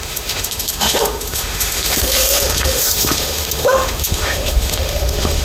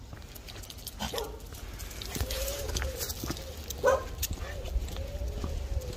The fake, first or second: first